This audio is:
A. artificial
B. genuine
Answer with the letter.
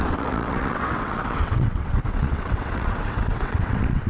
A